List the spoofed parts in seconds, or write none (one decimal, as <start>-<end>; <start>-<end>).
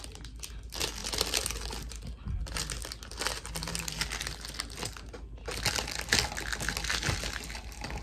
none